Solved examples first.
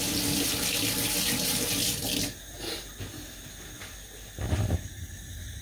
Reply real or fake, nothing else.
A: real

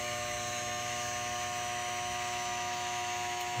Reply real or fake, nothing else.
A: fake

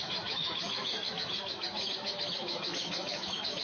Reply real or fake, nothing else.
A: fake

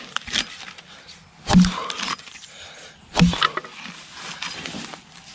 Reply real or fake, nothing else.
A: real